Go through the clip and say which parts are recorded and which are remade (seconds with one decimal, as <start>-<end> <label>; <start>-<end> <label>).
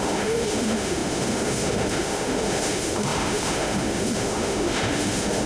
0.0-5.5 remade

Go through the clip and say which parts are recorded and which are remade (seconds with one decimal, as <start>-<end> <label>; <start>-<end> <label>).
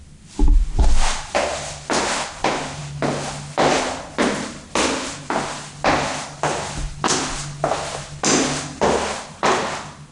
0.0-10.1 recorded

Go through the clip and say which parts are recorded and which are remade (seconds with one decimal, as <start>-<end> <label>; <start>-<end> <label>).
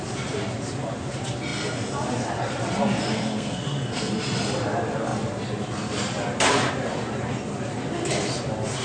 0.0-3.1 recorded; 3.1-4.1 remade; 4.1-8.8 recorded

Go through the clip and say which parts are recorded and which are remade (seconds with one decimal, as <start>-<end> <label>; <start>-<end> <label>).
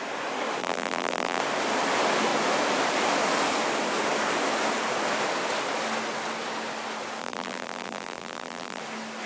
0.0-0.6 recorded; 0.6-1.4 remade; 1.4-7.2 recorded; 7.2-8.8 remade; 8.8-9.3 recorded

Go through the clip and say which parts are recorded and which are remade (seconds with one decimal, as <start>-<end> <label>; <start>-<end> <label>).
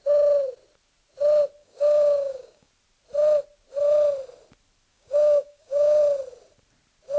0.0-1.6 recorded; 1.6-2.7 remade; 2.7-4.9 recorded; 4.9-6.0 remade; 6.0-7.2 recorded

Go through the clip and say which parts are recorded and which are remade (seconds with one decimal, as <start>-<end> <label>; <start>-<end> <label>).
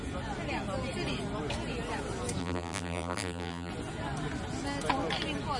0.0-2.4 recorded; 2.4-3.7 remade; 3.7-5.6 recorded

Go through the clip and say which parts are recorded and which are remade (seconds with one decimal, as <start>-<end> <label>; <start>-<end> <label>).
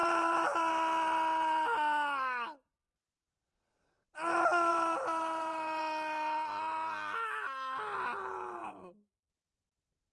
0.0-0.7 remade; 0.7-4.7 recorded; 4.7-5.8 remade; 5.8-8.6 recorded; 8.6-9.3 remade; 9.3-10.1 recorded